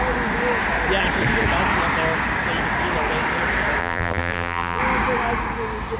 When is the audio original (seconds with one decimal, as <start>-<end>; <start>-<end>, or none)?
0.0-3.8; 4.8-6.0